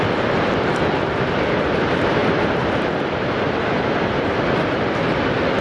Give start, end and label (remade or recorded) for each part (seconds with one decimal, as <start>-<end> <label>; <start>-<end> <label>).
0.0-5.6 recorded